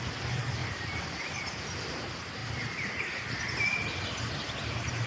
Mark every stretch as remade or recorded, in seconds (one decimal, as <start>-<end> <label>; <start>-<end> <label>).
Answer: 0.0-5.1 recorded